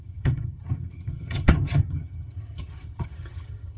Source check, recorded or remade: remade